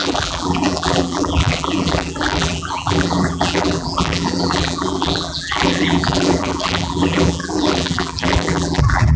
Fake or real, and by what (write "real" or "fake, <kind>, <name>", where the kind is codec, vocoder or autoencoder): fake, vocoder, BigVGAN v2